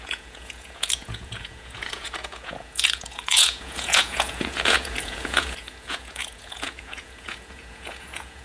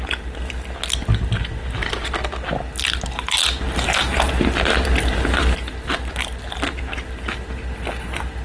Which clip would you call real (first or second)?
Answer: second